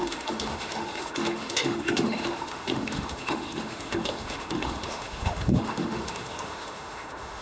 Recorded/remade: remade